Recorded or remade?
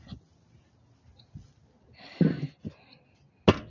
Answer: recorded